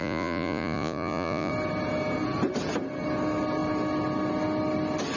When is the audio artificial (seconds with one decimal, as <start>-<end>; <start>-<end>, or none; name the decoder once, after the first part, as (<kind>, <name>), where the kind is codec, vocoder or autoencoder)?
0.0-1.5 (vocoder, Vocos)